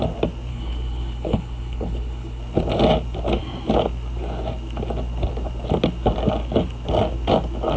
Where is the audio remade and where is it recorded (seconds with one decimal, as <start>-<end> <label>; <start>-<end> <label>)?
0.0-0.5 recorded; 0.5-2.4 remade; 2.4-7.8 recorded

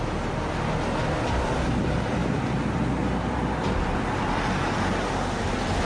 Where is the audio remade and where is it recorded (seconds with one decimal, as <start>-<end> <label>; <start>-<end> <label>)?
0.0-5.9 recorded

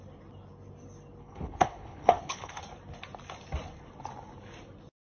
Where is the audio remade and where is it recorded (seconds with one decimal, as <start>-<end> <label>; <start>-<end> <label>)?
0.0-1.2 recorded; 1.2-2.6 remade; 2.6-5.1 recorded

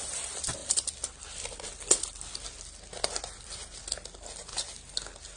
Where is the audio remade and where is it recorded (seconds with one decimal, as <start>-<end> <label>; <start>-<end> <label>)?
0.0-5.4 recorded

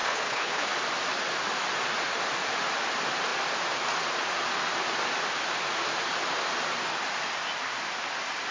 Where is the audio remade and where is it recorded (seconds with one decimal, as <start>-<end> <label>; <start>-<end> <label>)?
0.0-0.7 remade; 0.7-8.5 recorded

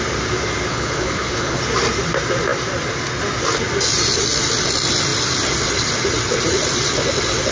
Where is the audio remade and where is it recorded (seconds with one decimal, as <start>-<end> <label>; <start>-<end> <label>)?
0.0-0.7 recorded; 0.7-1.6 remade; 1.6-7.5 recorded

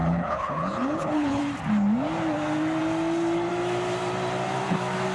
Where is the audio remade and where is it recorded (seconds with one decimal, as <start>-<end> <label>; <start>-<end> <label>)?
0.0-1.4 remade; 1.4-5.1 recorded